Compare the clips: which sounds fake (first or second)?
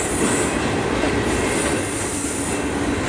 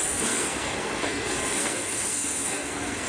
second